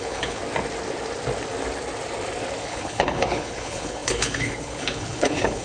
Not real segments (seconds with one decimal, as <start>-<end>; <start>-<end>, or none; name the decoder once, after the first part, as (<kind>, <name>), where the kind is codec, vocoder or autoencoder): 0.0-0.4 (codec, HILCodec); 2.6-5.6